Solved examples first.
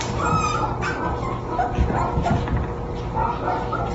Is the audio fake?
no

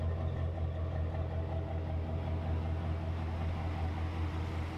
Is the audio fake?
no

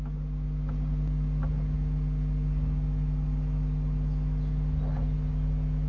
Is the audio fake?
no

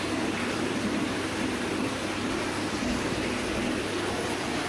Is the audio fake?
no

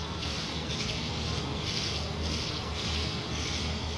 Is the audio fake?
yes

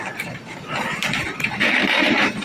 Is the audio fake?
yes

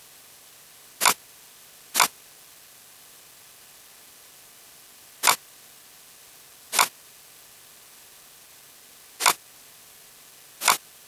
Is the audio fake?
no